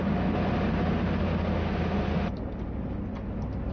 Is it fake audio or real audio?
real